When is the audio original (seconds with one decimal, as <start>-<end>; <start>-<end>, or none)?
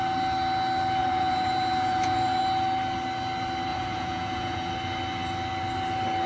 0.0-1.0; 2.4-3.7; 4.7-6.3